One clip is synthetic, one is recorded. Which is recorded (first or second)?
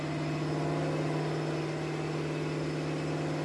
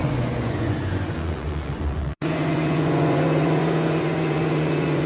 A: first